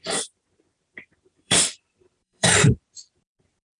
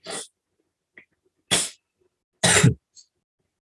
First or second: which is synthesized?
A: first